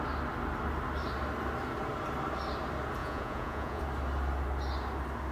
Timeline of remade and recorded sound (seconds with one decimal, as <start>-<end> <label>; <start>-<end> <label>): 0.0-3.0 recorded; 3.0-3.8 remade; 3.8-5.3 recorded